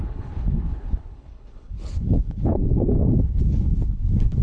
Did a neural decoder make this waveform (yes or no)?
yes